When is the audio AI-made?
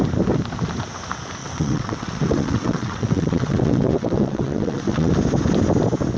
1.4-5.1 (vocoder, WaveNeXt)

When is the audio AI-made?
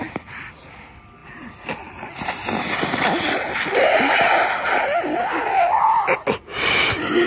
none